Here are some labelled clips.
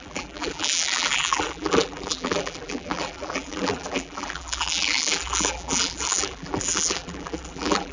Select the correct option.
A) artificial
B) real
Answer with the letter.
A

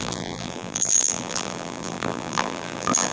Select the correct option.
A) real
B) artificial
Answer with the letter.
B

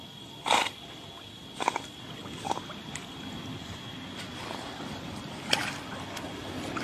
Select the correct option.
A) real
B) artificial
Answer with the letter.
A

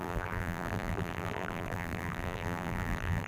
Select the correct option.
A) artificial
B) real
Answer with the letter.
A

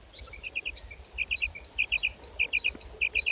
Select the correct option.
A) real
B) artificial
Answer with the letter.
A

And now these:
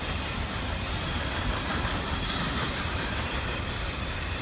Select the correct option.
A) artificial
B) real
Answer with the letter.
A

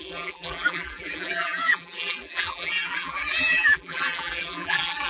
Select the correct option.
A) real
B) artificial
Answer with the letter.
B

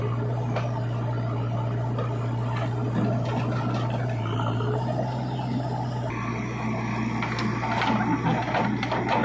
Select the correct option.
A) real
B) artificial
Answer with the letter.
A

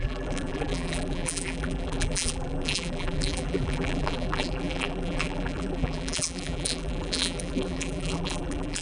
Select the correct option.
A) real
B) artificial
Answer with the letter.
B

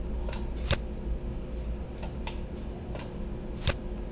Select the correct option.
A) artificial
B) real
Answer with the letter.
B